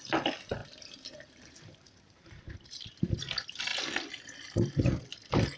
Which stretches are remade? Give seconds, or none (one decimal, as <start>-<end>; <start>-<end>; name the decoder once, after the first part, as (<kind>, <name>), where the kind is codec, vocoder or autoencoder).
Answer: 0.6-3.1 (vocoder, BigVGAN v2)